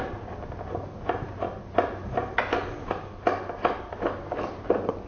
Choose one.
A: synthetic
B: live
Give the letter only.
B